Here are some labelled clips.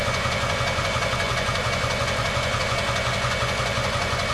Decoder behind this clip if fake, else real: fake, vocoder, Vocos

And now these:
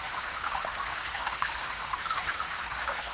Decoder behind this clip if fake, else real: fake, autoencoder, DAC-VAE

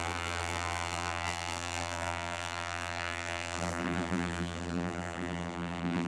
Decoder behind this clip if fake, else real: fake, vocoder, BigVGAN v2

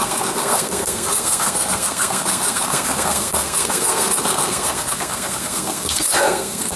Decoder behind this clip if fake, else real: fake, codec, SNAC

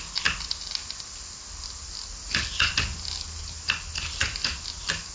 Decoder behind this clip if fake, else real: real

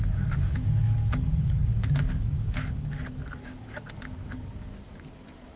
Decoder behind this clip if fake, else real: fake, codec, DAC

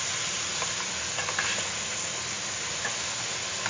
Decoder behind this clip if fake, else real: real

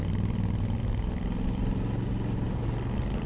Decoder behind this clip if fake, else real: real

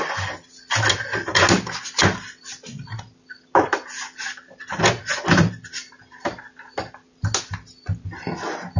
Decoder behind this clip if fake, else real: real